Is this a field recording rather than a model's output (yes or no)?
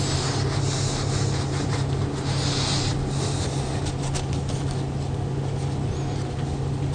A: yes